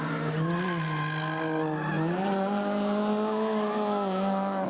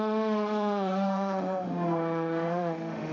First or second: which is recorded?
first